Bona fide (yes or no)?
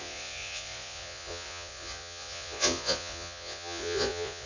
no